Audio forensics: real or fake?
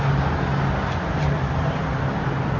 real